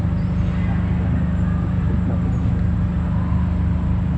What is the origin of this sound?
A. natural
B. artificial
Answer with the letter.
A